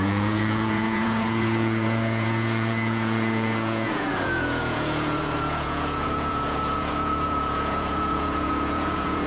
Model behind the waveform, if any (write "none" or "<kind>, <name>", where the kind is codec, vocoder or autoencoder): vocoder, Vocos